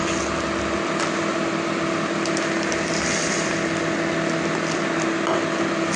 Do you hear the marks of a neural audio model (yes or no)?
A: no